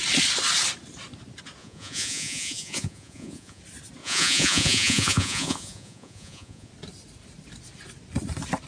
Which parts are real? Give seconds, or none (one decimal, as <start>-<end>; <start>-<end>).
0.0-1.6; 3.6-4.0; 6.7-8.7